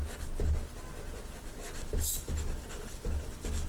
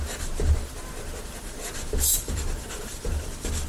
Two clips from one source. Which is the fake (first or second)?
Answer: second